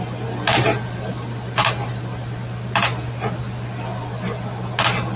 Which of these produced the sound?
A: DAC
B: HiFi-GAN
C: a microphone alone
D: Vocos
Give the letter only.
C